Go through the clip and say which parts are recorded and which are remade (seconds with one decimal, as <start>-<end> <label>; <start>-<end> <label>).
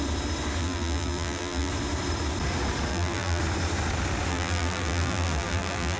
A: 0.0-0.6 recorded; 0.6-1.7 remade; 1.7-2.9 recorded; 2.9-3.4 remade; 3.4-4.3 recorded; 4.3-6.0 remade